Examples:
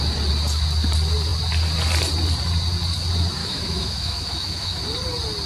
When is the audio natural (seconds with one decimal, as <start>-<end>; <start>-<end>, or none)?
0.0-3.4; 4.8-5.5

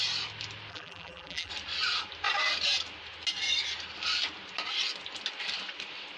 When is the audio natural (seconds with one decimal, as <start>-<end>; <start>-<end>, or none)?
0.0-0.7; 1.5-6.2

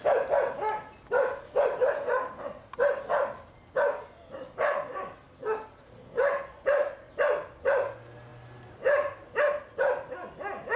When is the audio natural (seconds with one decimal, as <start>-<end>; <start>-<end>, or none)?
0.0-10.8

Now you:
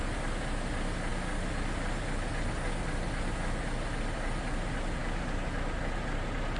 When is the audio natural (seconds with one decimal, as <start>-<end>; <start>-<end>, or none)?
0.0-6.6

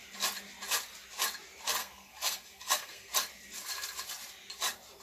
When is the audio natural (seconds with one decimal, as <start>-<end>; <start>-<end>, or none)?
0.0-1.8; 3.1-5.0

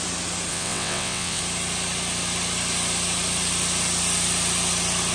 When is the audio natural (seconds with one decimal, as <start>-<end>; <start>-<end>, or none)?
0.0-0.5; 1.4-5.1